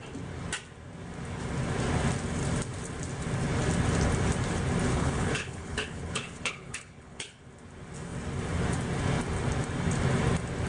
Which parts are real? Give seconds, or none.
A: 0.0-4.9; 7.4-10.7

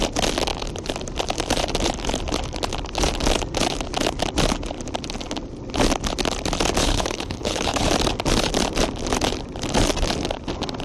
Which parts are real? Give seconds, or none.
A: 0.0-6.8; 7.9-10.8

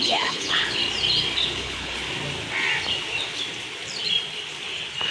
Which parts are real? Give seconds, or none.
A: 0.8-1.4; 2.0-5.1

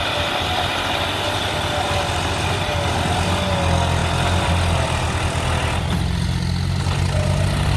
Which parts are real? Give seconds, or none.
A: 0.0-7.8

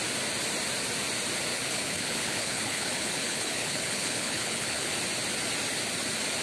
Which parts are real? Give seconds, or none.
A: 0.0-1.5; 4.9-6.4

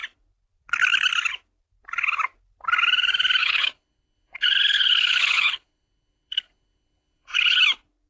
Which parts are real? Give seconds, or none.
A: 0.0-3.4; 7.6-8.1

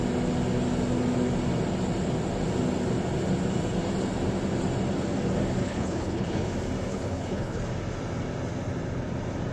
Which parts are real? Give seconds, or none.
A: 0.0-5.6; 6.5-6.9; 7.6-9.5